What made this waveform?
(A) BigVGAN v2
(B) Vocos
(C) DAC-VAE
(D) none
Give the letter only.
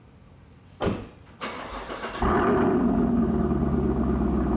D